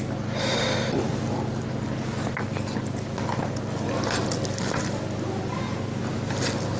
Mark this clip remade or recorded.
recorded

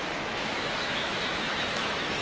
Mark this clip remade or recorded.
remade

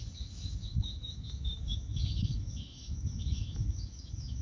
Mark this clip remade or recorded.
remade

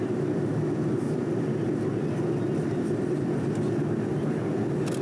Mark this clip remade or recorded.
recorded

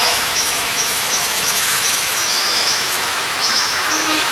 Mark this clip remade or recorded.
remade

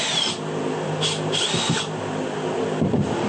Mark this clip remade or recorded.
recorded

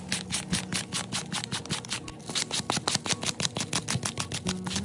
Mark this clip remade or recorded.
recorded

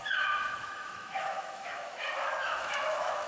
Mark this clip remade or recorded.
remade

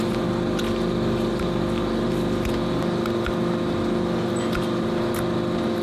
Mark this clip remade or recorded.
recorded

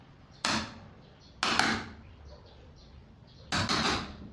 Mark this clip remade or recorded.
recorded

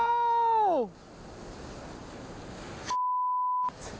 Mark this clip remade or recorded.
recorded